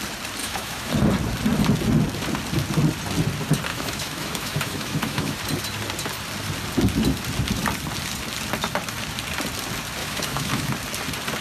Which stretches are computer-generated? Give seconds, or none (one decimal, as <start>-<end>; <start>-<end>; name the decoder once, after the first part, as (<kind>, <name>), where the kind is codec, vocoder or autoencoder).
0.4-0.9 (autoencoder, DAC-VAE); 3.7-5.4; 10.0-10.7